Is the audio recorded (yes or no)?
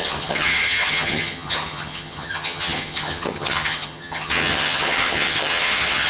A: no